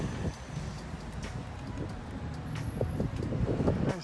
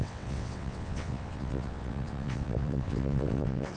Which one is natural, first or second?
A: first